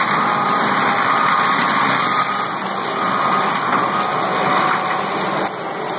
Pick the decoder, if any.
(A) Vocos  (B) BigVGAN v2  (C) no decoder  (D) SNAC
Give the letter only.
C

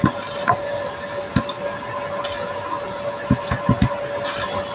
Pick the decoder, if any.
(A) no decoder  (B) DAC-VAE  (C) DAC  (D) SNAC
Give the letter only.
A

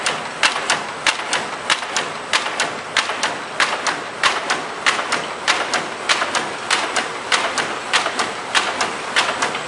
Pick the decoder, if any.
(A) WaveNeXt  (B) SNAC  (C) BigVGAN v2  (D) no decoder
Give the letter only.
D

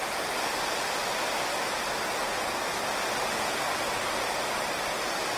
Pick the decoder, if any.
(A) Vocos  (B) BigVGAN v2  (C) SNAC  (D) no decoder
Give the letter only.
D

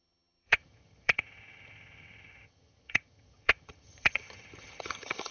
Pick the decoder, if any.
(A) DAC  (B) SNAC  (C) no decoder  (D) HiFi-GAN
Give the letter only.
D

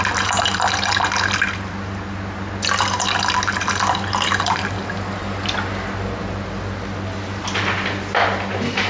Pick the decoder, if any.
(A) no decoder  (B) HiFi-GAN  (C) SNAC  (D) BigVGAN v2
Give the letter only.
A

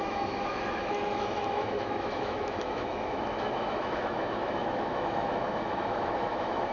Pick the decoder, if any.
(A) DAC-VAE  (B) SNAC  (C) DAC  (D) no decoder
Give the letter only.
A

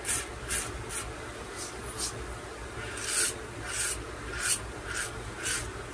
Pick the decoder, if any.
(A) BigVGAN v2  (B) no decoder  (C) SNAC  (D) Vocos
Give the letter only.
B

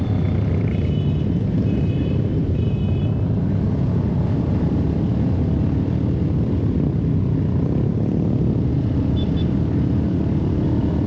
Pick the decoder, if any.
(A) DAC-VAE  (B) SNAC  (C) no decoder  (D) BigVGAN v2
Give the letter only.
D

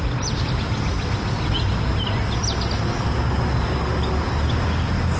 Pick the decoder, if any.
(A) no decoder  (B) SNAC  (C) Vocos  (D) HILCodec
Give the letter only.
A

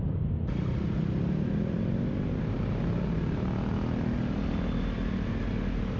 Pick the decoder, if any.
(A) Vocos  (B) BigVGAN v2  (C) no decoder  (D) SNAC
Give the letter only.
C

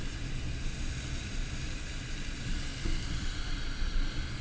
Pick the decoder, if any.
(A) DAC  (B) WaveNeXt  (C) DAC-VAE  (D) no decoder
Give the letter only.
D